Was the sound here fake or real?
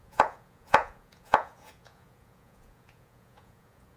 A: fake